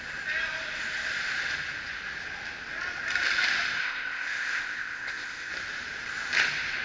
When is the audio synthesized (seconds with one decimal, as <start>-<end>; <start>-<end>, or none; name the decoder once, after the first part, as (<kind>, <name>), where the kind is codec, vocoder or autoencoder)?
3.8-5.5 (codec, ZipCodec)